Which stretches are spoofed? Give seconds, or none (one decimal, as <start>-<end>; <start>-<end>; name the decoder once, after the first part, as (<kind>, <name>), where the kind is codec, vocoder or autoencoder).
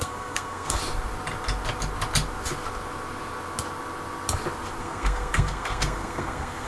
0.0-0.8 (codec, SNAC); 4.8-6.7